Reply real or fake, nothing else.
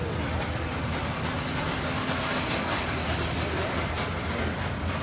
real